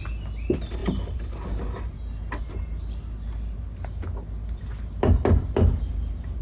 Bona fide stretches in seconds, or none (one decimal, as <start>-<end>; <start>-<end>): 0.0-6.4